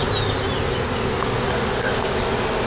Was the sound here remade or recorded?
recorded